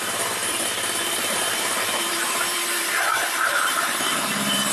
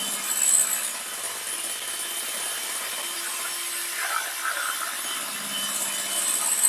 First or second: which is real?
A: second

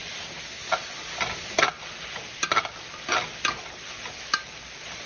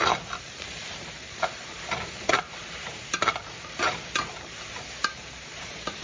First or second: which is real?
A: first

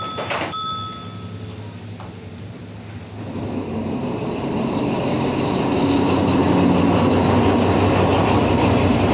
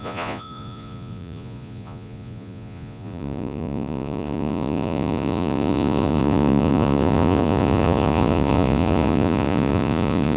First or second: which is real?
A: first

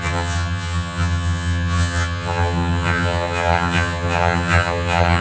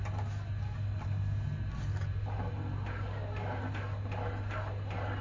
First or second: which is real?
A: second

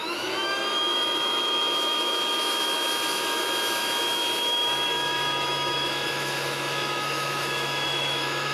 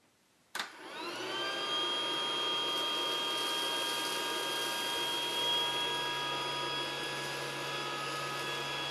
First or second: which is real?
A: second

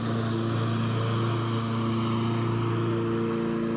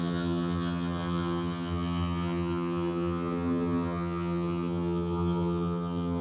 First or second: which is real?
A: first